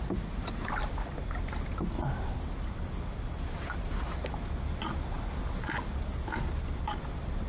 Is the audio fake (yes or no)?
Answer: no